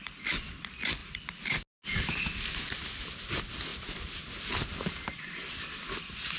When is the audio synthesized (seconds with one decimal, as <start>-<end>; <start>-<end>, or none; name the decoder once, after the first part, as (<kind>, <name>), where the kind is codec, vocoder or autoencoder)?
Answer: none